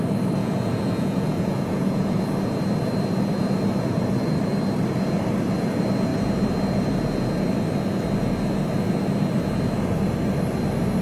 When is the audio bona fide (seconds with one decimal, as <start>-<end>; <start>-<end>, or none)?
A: 0.0-0.4; 2.2-11.0